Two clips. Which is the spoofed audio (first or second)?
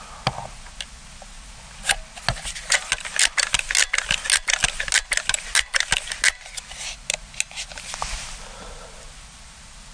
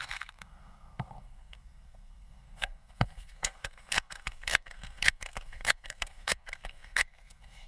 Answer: second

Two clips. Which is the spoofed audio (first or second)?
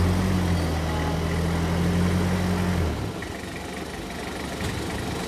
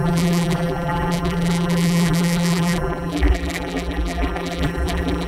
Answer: second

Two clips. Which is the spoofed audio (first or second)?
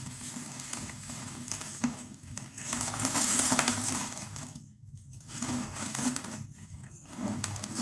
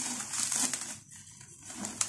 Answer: first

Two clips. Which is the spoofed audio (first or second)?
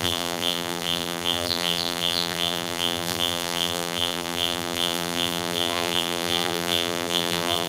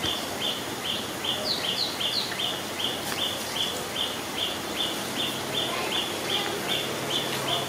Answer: first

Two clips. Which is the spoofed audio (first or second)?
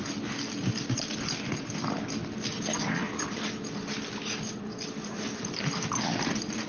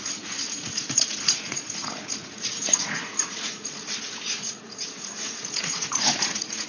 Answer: second